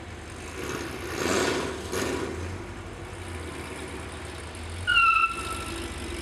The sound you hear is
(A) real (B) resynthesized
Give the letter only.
A